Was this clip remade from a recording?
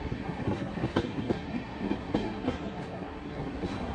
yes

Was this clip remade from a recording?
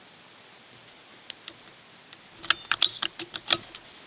no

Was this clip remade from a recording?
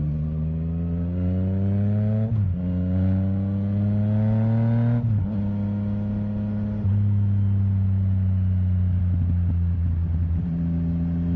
no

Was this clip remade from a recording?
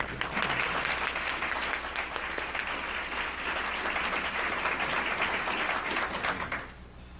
no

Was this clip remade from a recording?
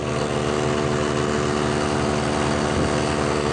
no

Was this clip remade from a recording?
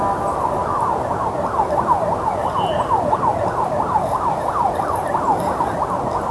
no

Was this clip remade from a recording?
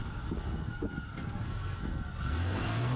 yes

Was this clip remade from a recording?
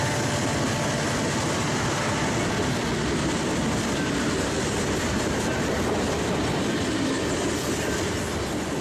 no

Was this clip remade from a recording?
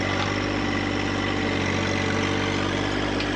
no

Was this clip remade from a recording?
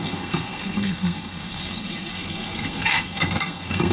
yes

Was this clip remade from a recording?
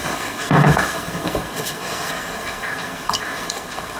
yes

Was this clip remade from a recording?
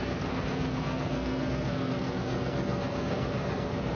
yes